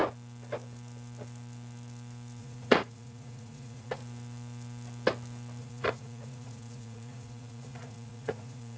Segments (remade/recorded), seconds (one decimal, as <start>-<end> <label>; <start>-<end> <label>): 0.0-2.4 recorded; 2.4-4.0 remade; 4.0-5.6 recorded; 5.6-8.8 remade